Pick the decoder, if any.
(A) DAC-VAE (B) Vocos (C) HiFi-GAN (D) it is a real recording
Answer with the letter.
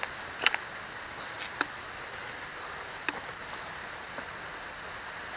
D